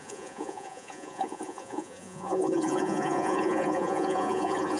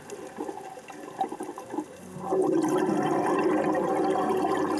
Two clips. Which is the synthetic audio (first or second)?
first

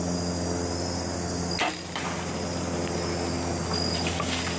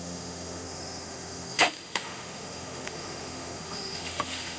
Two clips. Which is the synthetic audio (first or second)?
second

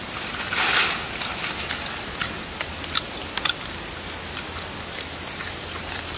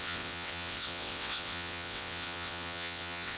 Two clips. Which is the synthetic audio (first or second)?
second